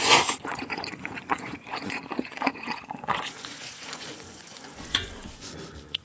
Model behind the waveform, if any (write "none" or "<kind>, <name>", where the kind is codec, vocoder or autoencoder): vocoder, Vocos